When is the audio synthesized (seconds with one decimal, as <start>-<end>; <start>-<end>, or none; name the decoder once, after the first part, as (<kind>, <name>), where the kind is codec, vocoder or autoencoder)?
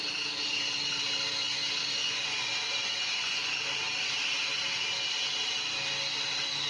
2.0-3.6 (vocoder, Vocos)